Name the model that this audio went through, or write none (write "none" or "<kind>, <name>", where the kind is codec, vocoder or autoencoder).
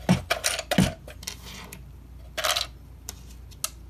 none